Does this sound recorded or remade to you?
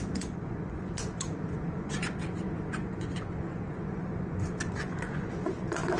remade